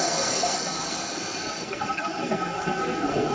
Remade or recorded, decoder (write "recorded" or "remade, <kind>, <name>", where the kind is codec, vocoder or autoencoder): remade, codec, SNAC